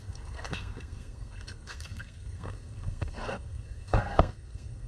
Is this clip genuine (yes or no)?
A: no